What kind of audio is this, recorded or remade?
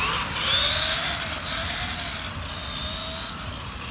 recorded